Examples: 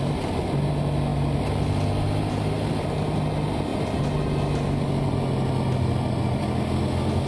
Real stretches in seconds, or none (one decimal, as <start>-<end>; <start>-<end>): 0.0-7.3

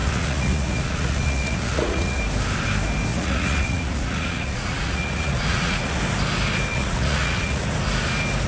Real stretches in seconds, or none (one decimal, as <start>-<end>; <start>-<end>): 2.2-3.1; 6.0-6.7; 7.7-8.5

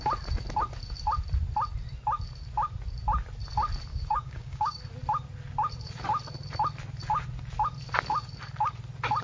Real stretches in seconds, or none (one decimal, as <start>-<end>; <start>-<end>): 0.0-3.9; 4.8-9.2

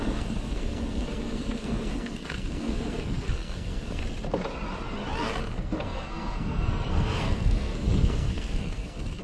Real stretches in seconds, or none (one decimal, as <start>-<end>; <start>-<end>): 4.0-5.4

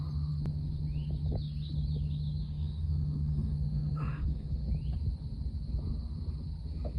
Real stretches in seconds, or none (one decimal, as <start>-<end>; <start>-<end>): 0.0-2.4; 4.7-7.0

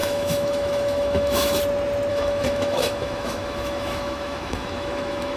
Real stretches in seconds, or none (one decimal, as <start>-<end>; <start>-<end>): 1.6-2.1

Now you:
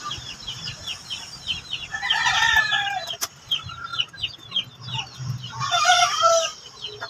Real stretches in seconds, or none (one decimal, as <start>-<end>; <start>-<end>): 3.9-5.4; 6.5-7.1

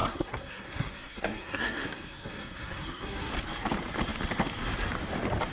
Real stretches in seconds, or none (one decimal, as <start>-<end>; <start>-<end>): 3.3-5.5